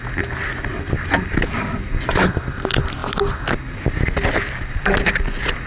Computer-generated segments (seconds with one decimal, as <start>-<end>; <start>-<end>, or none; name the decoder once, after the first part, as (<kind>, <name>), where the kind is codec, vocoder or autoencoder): none